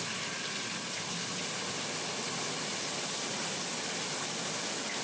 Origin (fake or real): real